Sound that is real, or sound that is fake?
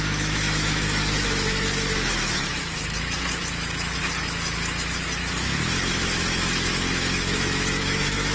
fake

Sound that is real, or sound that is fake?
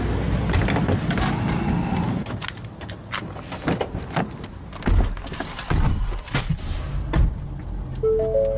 real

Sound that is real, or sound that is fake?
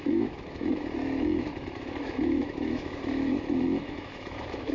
fake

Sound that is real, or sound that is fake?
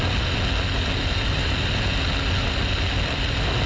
real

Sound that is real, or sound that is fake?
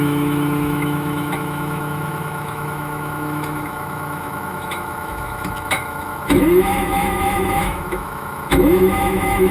fake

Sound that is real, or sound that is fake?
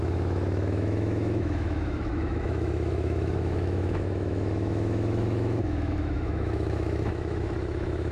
fake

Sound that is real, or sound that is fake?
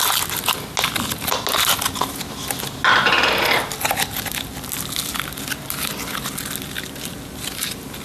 real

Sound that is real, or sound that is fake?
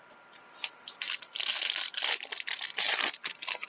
real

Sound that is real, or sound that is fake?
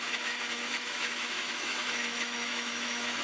fake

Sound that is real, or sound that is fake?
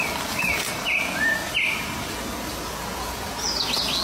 real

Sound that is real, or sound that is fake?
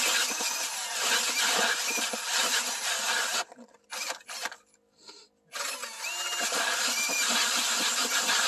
real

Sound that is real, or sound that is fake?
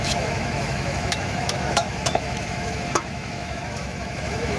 fake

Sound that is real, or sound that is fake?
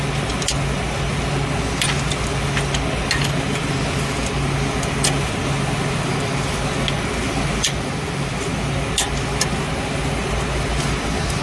real